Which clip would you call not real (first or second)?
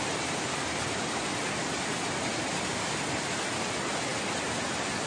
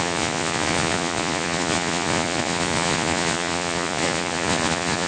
second